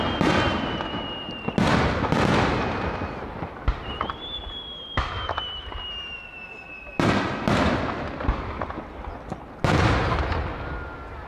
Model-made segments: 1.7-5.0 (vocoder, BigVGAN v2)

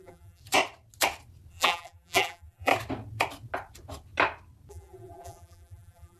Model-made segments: 0.0-0.4 (vocoder, BigVGAN v2); 1.5-2.7; 4.7-6.2